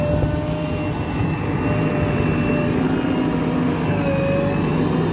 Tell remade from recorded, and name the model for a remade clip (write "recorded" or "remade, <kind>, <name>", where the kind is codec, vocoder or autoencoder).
recorded